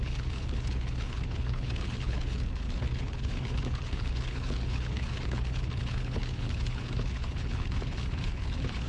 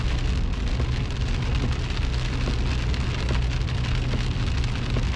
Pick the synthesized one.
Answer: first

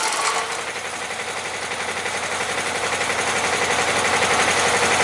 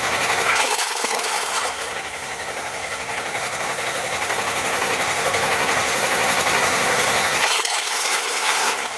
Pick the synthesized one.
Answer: second